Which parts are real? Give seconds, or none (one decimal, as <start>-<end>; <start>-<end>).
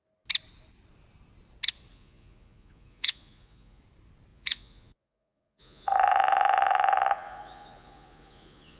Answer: 0.0-1.9; 3.8-4.3